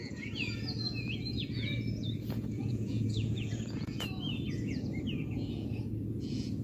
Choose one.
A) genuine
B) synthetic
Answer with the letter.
B